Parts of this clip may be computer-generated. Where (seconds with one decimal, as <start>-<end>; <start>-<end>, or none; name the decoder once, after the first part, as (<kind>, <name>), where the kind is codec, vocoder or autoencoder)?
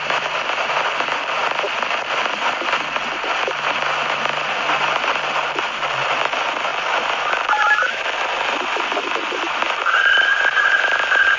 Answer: none